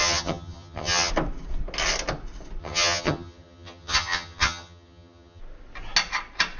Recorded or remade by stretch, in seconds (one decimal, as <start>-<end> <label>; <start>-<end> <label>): 0.0-1.1 remade; 1.1-2.6 recorded; 2.6-5.4 remade; 5.4-6.6 recorded